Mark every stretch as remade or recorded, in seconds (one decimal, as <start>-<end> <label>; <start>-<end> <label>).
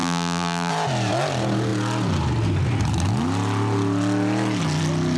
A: 0.0-0.7 remade; 0.7-5.2 recorded